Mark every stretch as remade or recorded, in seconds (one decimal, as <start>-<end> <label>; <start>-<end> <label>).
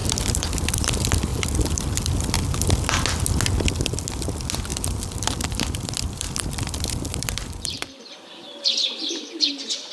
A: 0.0-0.9 remade; 0.9-1.3 recorded; 1.3-2.4 remade; 2.4-4.7 recorded; 4.7-9.5 remade; 9.5-9.9 recorded